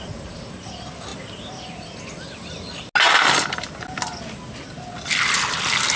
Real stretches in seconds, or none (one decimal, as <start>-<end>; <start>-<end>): 0.0-6.0